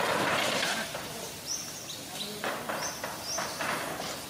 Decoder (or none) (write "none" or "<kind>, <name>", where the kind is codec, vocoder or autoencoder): none